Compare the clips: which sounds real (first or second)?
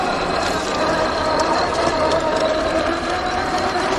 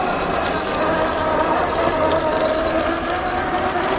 second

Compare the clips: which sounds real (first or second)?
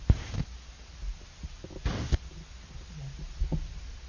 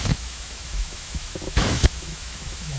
first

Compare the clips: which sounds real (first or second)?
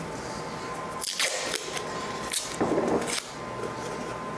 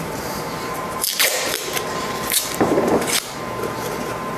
first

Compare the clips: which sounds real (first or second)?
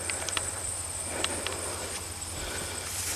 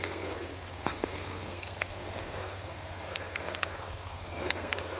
first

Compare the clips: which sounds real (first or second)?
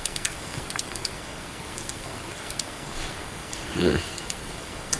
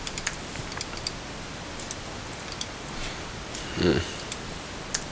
second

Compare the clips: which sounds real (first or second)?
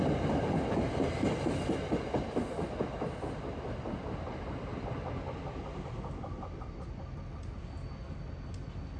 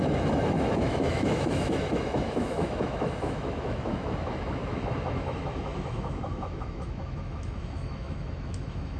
first